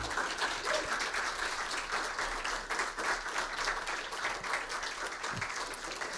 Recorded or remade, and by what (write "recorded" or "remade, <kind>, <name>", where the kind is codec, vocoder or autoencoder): recorded